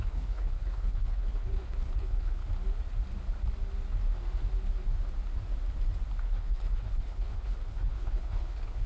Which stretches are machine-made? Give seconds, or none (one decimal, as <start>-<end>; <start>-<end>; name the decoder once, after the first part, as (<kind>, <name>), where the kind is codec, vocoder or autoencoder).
0.0-2.4 (codec, HILCodec); 6.2-8.9